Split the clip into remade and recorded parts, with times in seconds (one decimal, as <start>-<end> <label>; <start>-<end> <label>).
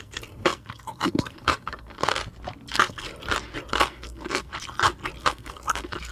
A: 0.0-2.1 remade; 2.1-2.7 recorded; 2.7-3.1 remade; 3.1-3.7 recorded; 3.7-4.5 remade; 4.5-5.2 recorded; 5.2-6.1 remade